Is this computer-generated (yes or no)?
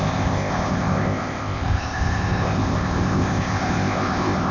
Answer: yes